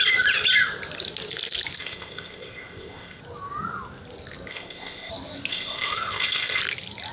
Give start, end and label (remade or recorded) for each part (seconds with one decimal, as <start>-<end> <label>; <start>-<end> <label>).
0.0-1.8 recorded; 1.8-3.2 remade; 3.2-4.5 recorded; 4.5-5.1 remade; 5.1-5.5 recorded; 5.5-6.6 remade; 6.6-7.1 recorded